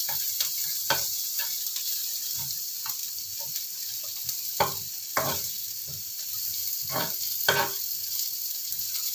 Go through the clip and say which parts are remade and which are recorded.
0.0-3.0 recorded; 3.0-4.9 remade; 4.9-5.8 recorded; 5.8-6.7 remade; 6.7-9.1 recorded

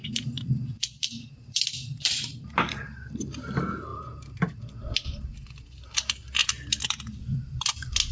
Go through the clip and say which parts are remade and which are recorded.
0.0-3.1 remade; 3.1-6.4 recorded; 6.4-7.6 remade; 7.6-8.1 recorded